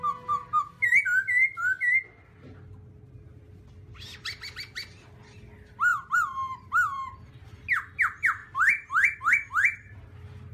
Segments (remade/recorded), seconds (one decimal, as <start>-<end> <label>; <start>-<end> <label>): 0.0-5.9 recorded; 5.9-7.3 remade; 7.3-10.5 recorded